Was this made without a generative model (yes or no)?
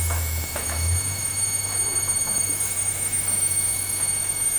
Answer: no